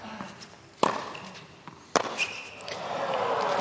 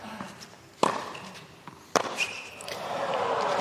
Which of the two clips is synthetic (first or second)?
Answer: second